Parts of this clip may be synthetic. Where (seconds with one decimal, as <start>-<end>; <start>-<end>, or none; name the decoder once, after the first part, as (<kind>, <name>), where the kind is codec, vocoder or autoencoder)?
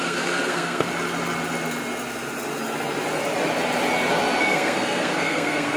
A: 0.0-0.9 (codec, SNAC); 4.4-5.8